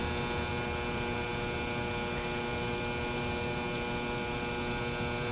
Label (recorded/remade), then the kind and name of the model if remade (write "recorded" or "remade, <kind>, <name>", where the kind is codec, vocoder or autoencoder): recorded